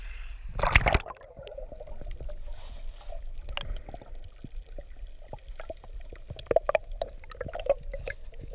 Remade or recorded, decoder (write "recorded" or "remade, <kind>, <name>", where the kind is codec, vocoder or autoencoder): recorded